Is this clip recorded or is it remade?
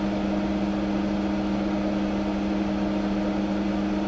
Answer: recorded